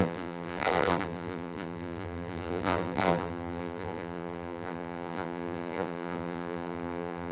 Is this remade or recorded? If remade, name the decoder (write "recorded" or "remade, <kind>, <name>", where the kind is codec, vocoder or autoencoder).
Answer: remade, vocoder, BigVGAN v2